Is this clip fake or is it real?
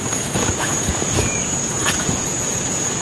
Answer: fake